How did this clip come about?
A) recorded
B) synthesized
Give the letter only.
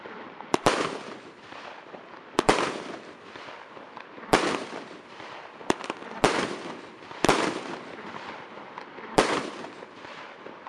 B